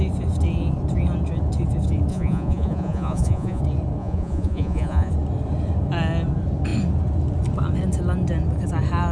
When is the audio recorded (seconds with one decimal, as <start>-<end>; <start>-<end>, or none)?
0.0-2.1; 3.6-4.0; 5.1-9.1